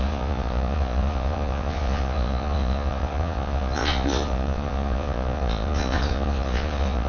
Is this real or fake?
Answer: fake